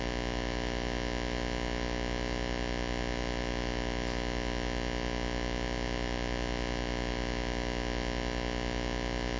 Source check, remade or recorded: recorded